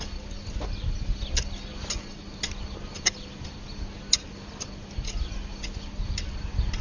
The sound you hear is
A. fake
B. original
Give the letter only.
B